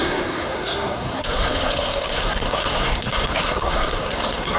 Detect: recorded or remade remade